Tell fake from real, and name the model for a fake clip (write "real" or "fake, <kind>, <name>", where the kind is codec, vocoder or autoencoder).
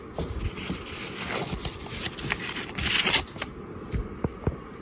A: fake, vocoder, BigVGAN v2